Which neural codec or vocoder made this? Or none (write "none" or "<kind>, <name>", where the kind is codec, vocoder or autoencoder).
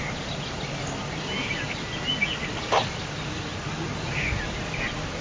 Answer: none